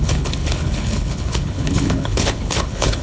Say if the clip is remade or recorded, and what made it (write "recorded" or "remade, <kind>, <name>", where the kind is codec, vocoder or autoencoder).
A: remade, codec, HILCodec